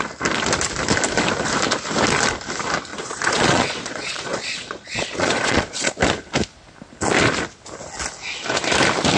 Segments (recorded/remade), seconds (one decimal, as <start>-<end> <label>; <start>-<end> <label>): 0.0-2.9 recorded; 2.9-5.9 remade; 5.9-9.2 recorded